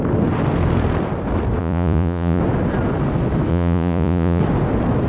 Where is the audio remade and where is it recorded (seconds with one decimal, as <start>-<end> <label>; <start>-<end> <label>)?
0.0-1.6 recorded; 1.6-2.4 remade; 2.4-3.5 recorded; 3.5-4.4 remade; 4.4-5.1 recorded